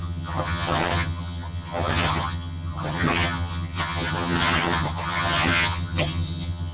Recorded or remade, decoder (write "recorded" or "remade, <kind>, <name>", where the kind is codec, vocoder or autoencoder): remade, vocoder, HiFi-GAN